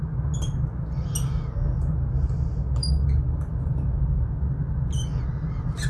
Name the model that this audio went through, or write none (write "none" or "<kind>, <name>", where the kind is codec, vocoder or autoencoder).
none